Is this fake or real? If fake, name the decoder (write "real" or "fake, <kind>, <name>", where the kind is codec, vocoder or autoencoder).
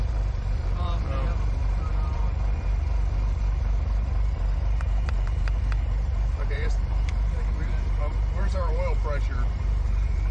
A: fake, vocoder, BigVGAN v2